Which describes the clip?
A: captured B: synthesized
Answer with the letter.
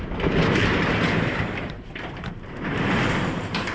B